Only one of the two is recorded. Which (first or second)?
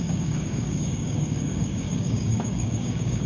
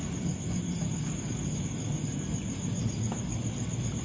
second